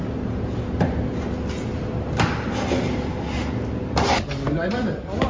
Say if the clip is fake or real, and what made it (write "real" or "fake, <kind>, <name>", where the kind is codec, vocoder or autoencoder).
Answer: real